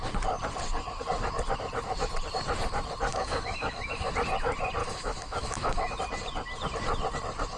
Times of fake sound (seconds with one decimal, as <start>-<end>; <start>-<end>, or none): 3.1-4.1; 4.8-6.0